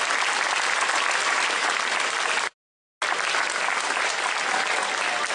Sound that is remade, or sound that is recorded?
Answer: recorded